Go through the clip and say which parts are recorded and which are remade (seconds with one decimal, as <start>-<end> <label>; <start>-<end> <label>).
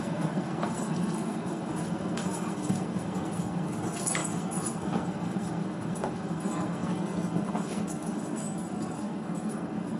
0.0-10.0 remade